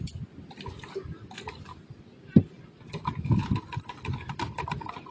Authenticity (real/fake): real